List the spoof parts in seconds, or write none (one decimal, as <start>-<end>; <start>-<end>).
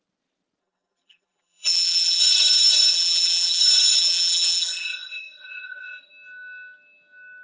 0.6-2.2; 2.9-3.6; 4.0-6.1